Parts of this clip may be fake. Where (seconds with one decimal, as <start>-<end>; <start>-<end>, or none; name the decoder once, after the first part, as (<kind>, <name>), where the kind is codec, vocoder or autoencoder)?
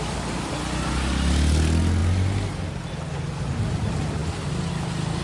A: none